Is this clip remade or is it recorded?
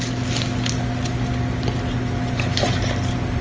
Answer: recorded